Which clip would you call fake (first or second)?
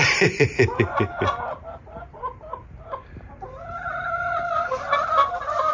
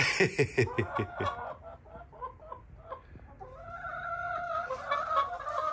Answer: first